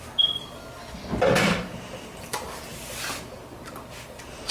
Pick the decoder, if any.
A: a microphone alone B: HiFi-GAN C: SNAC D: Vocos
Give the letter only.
A